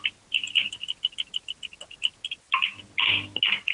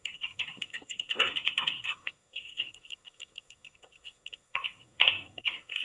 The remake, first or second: second